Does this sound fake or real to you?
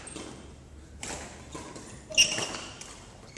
real